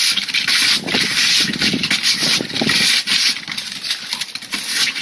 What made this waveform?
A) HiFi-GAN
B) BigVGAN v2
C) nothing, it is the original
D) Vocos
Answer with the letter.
C